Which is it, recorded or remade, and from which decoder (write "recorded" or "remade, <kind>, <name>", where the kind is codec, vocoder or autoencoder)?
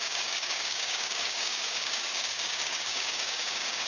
remade, codec, DAC